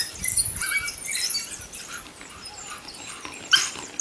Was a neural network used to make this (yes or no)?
yes